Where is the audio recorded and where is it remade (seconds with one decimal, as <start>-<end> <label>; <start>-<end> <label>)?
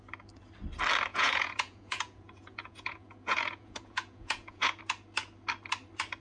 0.0-1.1 recorded; 1.1-4.8 remade; 4.8-6.2 recorded